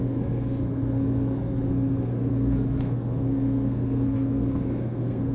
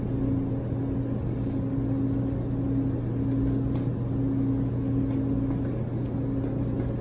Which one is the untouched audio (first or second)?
second